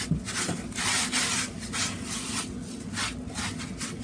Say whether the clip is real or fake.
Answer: real